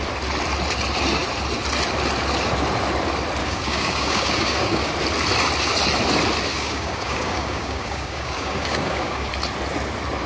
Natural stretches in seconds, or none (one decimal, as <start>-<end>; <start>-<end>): 0.0-3.4; 4.9-6.5; 9.3-10.3